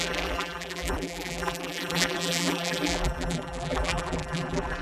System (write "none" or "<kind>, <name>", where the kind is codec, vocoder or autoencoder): vocoder, BigVGAN v2